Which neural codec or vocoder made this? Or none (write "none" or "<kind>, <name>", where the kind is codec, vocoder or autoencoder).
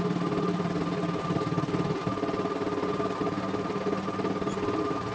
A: none